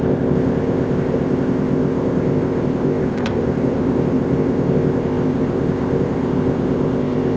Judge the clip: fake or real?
fake